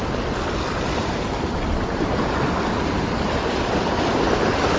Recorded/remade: recorded